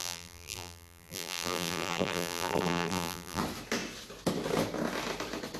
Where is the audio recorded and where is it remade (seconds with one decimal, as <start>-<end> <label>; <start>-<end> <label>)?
0.0-3.4 remade; 3.4-5.6 recorded